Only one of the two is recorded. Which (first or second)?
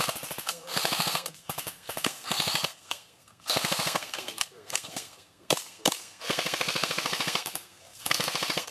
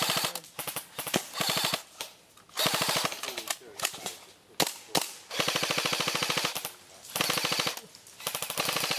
second